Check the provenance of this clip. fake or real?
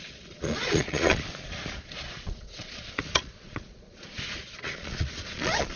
fake